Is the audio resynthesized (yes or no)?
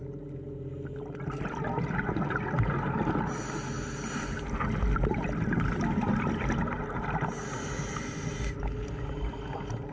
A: no